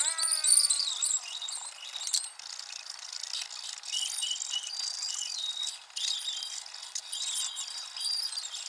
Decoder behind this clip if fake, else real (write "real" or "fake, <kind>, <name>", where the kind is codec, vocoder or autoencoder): real